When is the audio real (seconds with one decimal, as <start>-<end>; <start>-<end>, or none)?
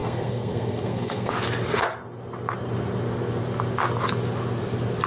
1.3-5.1